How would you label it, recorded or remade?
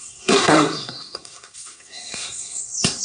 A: remade